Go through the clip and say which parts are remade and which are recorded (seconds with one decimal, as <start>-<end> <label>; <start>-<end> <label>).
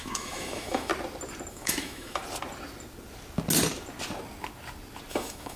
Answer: 0.0-0.9 remade; 0.9-1.5 recorded; 1.5-2.2 remade; 2.2-5.1 recorded; 5.1-5.6 remade